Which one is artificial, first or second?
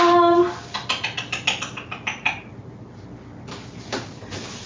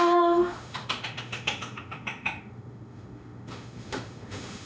second